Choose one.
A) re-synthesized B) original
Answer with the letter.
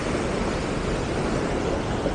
B